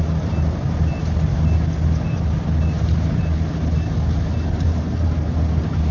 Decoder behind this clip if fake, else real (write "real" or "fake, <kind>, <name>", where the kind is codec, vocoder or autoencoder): real